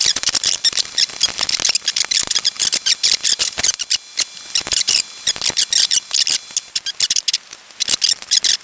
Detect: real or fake real